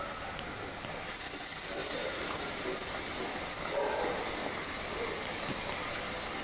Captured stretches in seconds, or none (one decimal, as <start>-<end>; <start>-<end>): 0.0-1.8; 3.6-4.4; 5.9-6.4